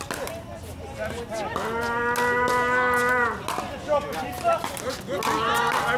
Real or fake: real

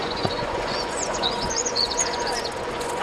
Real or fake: fake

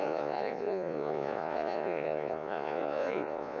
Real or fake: fake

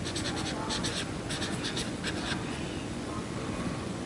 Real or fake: fake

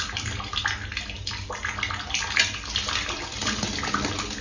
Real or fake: real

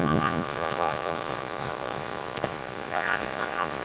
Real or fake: fake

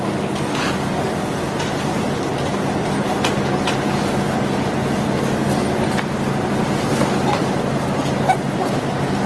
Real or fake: real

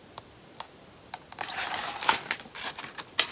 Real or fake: real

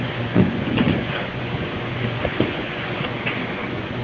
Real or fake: fake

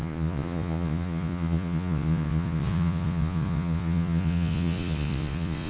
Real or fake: fake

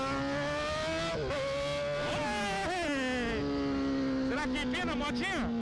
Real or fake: real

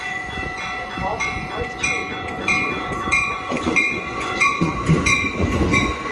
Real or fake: fake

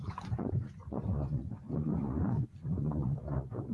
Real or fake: fake